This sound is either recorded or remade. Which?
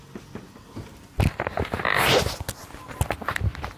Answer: recorded